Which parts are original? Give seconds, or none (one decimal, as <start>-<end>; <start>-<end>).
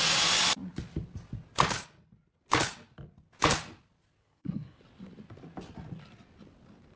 0.0-4.2; 4.8-7.0